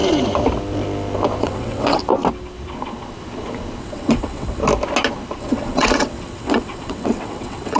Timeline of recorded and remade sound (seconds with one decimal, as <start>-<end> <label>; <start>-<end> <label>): 0.0-1.4 recorded; 1.4-2.0 remade; 2.0-3.8 recorded; 3.8-4.6 remade; 4.6-5.4 recorded; 5.4-7.8 remade